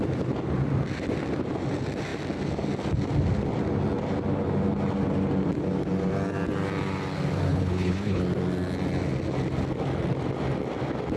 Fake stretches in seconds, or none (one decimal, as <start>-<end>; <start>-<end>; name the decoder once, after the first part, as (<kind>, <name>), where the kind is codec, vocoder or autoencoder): 7.5-8.2 (codec, HILCodec)